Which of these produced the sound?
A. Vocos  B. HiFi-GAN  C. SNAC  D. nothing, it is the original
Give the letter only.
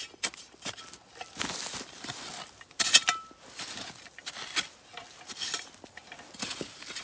D